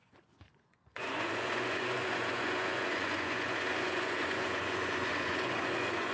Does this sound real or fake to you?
fake